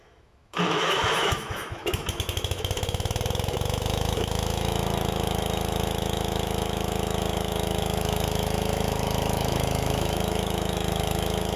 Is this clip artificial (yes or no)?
yes